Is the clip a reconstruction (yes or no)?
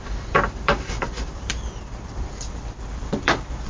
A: yes